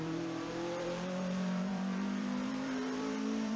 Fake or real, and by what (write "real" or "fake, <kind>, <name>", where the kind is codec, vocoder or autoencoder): fake, vocoder, BigVGAN v2